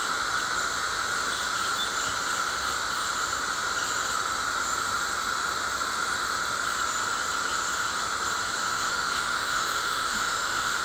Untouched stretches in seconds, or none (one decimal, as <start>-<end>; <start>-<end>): 0.0-8.7